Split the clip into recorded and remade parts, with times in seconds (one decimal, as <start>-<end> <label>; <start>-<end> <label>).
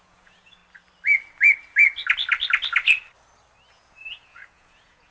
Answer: 0.0-0.6 remade; 0.6-3.7 recorded; 3.7-5.1 remade